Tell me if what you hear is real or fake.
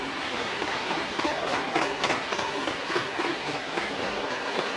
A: fake